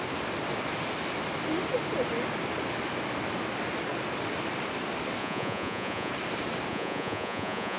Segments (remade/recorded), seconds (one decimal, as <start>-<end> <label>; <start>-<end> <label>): 0.0-5.2 recorded; 5.2-6.1 remade; 6.1-6.7 recorded; 6.7-7.8 remade